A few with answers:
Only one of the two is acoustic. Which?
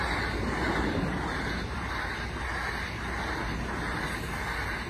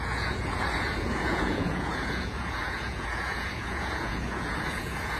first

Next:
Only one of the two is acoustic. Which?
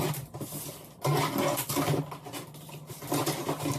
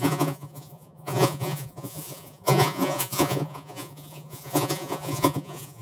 first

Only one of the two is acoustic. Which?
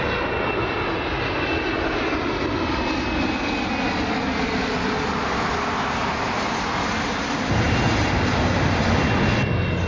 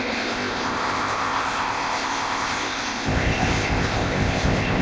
first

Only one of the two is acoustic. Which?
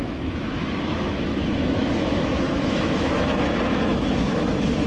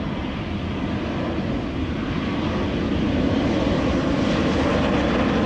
second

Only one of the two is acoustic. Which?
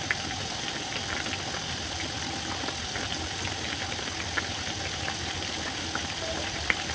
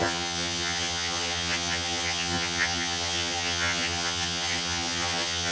first